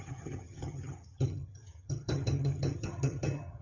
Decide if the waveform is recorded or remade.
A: remade